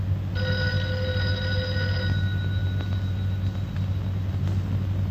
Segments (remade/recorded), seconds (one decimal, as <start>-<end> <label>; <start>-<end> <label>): 0.0-5.1 recorded